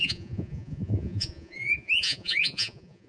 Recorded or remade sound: remade